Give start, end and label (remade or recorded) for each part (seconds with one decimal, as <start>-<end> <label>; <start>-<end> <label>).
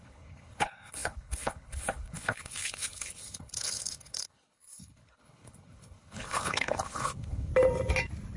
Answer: 0.0-7.5 remade; 7.5-8.4 recorded